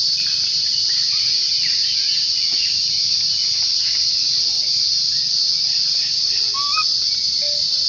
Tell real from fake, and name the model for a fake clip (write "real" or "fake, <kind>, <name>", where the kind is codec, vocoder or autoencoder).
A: real